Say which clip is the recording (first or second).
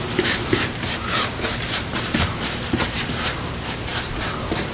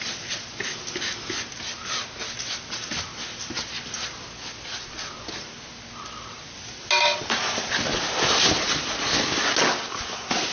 second